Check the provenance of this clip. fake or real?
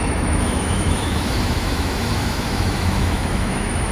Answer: fake